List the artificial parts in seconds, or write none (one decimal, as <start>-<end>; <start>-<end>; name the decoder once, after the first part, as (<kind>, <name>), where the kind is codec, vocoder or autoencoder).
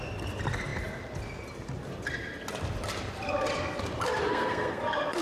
4.3-4.8 (codec, SNAC)